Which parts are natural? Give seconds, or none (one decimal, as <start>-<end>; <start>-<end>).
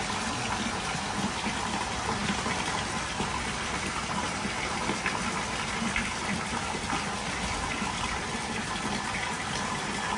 0.0-10.2